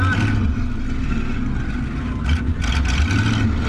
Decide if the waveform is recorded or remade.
recorded